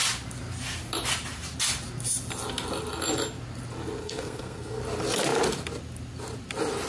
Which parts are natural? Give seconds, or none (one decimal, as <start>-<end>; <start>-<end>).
0.0-4.0; 4.8-6.9